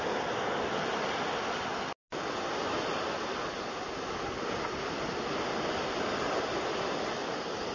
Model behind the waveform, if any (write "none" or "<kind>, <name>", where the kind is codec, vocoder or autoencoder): none